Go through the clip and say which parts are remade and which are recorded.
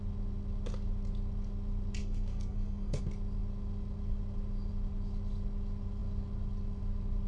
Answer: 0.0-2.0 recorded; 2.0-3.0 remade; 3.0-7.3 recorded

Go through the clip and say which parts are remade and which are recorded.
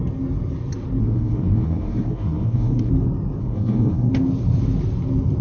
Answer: 0.0-1.0 recorded; 1.0-2.9 remade; 2.9-3.4 recorded; 3.4-4.1 remade; 4.1-5.4 recorded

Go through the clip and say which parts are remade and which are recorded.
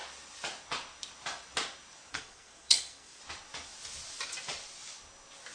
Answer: 0.0-2.1 recorded; 2.1-3.2 remade; 3.2-5.5 recorded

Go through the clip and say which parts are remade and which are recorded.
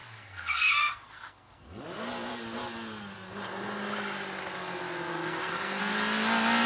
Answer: 0.0-1.8 remade; 1.8-5.1 recorded; 5.1-5.8 remade; 5.8-6.7 recorded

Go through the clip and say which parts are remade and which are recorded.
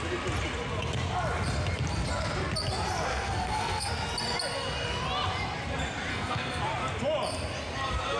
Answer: 0.0-3.1 recorded; 3.1-3.9 remade; 3.9-6.1 recorded; 6.1-6.6 remade; 6.6-8.2 recorded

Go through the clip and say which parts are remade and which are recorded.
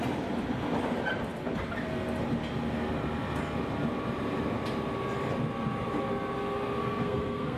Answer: 0.0-6.8 recorded; 6.8-7.6 remade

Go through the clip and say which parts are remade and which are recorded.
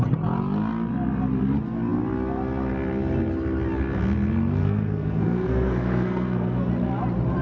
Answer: 0.0-4.6 recorded; 4.6-6.7 remade; 6.7-7.4 recorded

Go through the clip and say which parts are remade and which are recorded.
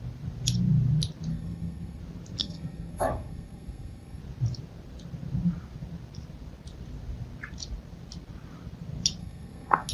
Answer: 0.0-1.3 recorded; 1.3-2.0 remade; 2.0-2.4 recorded; 2.4-4.2 remade; 4.2-9.2 recorded; 9.2-9.9 remade